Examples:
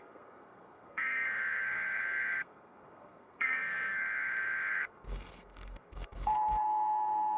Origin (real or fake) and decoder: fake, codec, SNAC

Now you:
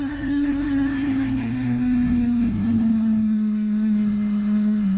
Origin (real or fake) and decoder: fake, codec, SNAC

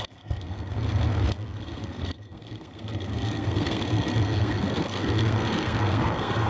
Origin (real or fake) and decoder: fake, codec, SNAC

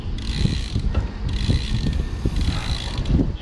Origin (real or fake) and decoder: real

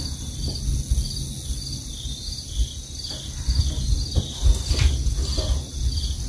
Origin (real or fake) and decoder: real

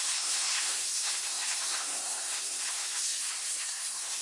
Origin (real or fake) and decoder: fake, codec, SNAC